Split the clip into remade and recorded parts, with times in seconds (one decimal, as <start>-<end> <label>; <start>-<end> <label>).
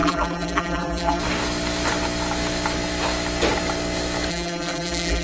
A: 0.0-1.2 remade; 1.2-4.3 recorded; 4.3-5.2 remade